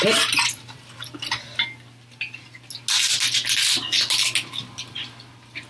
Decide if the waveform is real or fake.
real